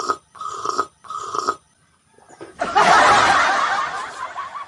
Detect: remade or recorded recorded